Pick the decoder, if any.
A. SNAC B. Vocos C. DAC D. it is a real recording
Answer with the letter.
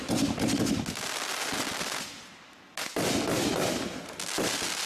D